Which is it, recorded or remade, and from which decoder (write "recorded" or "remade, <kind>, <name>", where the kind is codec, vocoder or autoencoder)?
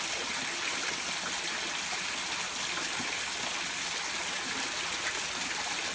recorded